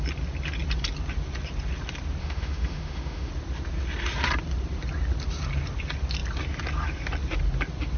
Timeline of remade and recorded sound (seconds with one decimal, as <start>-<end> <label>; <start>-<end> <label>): 0.0-2.2 recorded; 2.2-3.3 remade; 3.3-8.0 recorded